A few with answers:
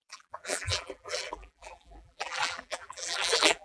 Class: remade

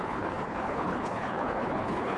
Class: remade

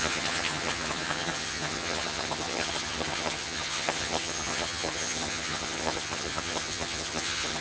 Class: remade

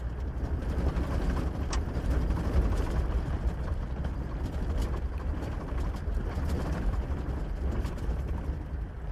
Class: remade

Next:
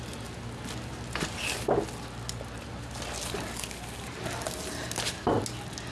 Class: recorded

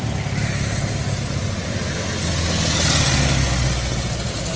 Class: recorded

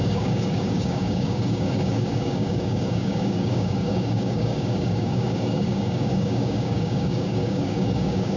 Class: remade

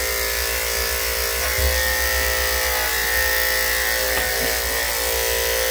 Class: recorded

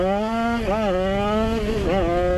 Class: recorded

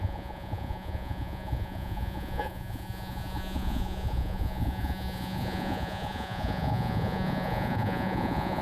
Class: remade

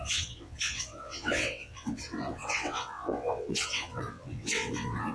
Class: remade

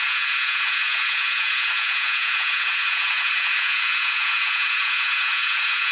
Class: remade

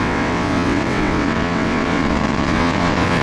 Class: remade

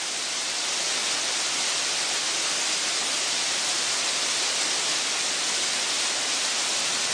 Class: recorded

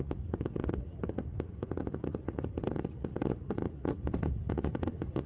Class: remade